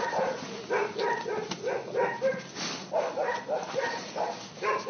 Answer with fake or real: real